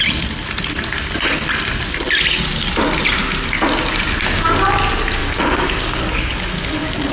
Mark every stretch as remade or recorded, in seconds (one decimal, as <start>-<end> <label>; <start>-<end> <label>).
0.0-5.2 recorded; 5.2-7.1 remade